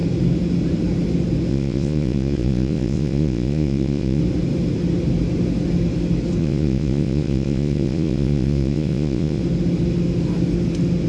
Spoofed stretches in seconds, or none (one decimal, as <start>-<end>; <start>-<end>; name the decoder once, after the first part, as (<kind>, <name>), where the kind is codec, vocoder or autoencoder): 1.5-4.2 (vocoder, Vocos); 6.4-9.4